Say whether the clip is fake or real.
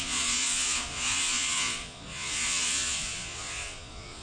fake